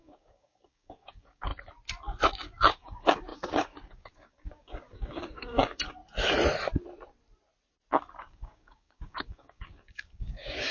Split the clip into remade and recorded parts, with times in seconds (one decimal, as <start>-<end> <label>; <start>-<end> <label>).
0.0-1.5 remade; 1.5-2.3 recorded; 2.3-6.0 remade; 6.0-8.2 recorded; 8.2-10.7 remade